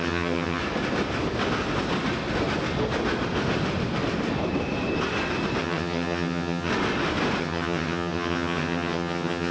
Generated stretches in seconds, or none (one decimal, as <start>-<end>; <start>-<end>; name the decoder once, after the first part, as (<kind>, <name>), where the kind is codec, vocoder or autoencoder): 0.0-0.6 (vocoder, HiFi-GAN); 5.6-6.7; 7.4-9.5